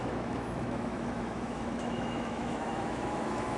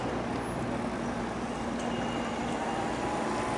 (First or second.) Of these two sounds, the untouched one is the second